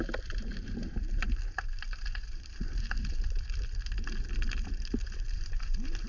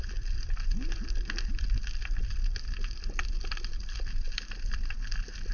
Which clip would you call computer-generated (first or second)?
first